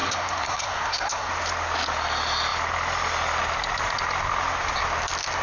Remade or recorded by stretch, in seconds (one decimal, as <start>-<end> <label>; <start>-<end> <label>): 0.0-1.3 remade; 1.3-5.4 recorded